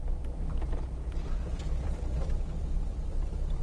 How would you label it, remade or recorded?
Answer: remade